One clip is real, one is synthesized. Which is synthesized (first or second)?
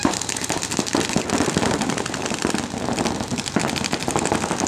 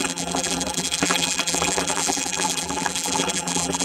second